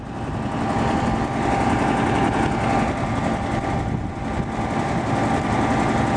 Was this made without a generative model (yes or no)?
yes